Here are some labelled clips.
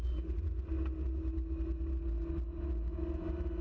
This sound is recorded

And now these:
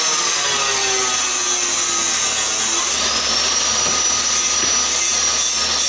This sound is recorded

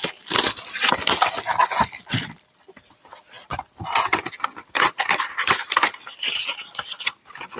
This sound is remade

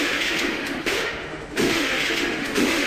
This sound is remade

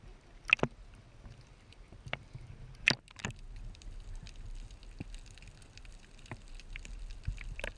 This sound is recorded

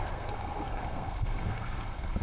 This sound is remade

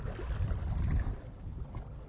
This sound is recorded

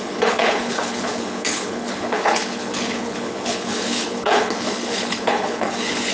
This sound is remade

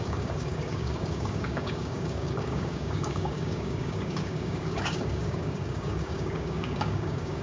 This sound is remade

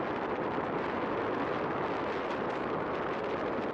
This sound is recorded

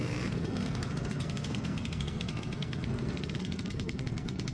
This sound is remade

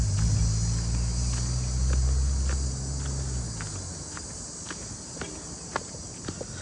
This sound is recorded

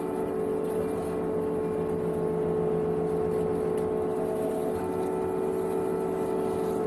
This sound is recorded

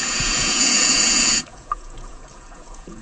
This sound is remade